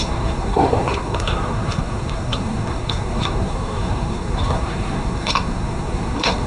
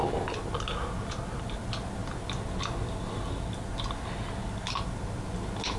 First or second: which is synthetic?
first